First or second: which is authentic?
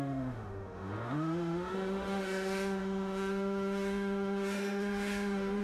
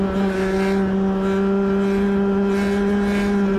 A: second